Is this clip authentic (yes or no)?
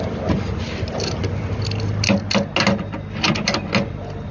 yes